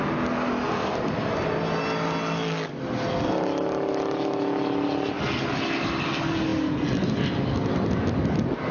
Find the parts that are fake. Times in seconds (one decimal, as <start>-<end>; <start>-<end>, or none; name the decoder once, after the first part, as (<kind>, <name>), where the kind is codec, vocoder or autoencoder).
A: none